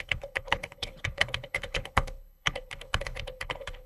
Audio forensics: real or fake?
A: fake